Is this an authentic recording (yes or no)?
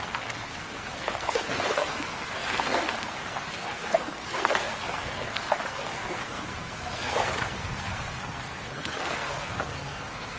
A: no